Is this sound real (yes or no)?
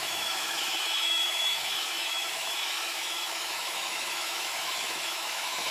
no